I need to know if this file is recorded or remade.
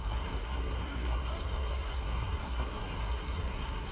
remade